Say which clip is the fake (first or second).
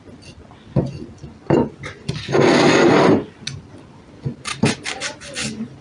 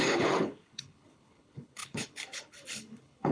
second